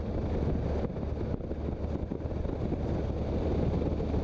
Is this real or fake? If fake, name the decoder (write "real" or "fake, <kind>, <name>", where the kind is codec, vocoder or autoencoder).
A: real